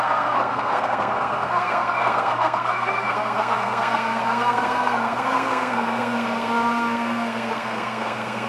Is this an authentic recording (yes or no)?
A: no